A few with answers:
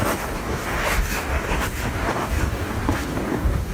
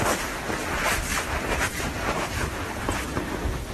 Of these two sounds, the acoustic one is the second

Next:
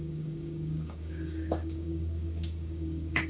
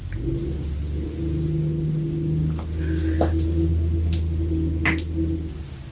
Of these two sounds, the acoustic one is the second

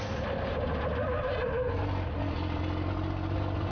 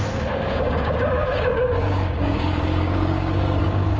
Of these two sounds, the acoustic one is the first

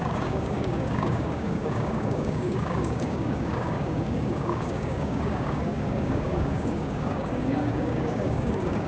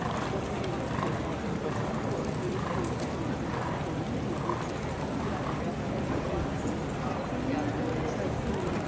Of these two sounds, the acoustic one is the second